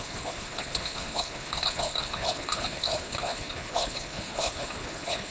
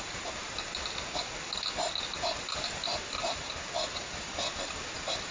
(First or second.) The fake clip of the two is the first